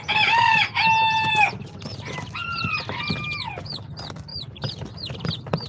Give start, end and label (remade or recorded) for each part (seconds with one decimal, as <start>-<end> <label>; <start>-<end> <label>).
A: 0.0-4.3 recorded; 4.3-5.1 remade; 5.1-5.7 recorded